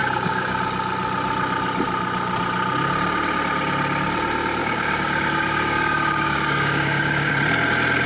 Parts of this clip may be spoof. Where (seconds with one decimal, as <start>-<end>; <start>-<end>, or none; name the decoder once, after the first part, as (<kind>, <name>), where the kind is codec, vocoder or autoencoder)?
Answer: 0.0-0.6 (codec, DAC); 4.6-7.3